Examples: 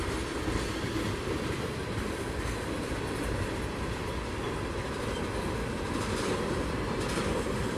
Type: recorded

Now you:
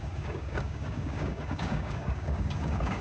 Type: remade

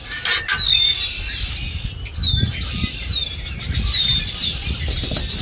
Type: recorded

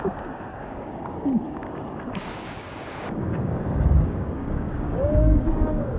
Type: remade